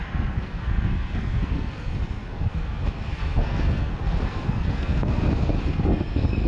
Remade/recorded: remade